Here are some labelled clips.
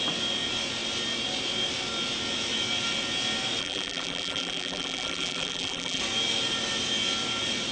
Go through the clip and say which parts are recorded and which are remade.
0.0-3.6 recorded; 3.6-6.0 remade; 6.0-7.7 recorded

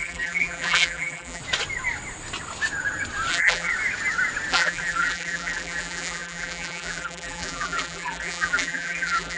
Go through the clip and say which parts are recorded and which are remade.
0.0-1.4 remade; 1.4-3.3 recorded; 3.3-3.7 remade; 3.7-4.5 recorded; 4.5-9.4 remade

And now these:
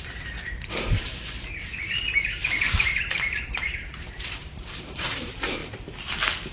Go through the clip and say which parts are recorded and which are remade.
0.0-5.6 remade; 5.6-6.5 recorded